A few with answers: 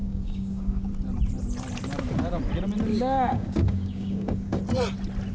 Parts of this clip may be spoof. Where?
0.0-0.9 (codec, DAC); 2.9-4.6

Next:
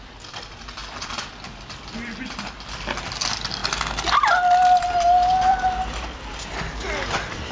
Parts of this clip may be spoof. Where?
0.8-1.3 (vocoder, BigVGAN v2); 5.5-6.4

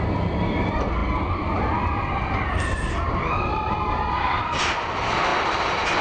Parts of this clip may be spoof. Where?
none

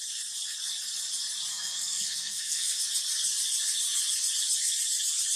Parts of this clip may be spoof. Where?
1.5-2.8 (codec, SNAC)

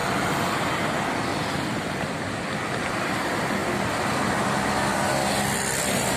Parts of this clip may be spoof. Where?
0.0-0.7 (vocoder, BigVGAN v2); 1.3-2.9; 3.6-4.4

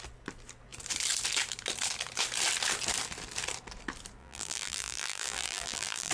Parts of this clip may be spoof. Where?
4.2-6.1 (vocoder, BigVGAN v2)

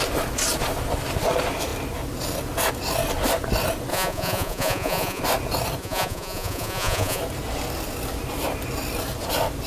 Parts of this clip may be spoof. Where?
3.9-5.2 (vocoder, Vocos); 5.8-7.2